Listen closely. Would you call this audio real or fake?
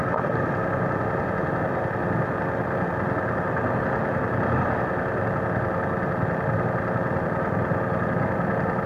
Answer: real